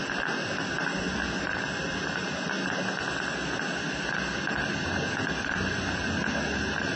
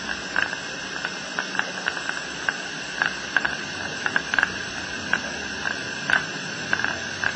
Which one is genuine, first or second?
first